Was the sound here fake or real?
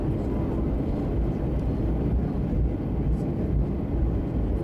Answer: real